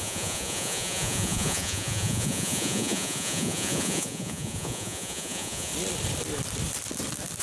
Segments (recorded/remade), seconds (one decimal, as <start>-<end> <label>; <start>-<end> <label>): 0.0-5.7 remade; 5.7-7.4 recorded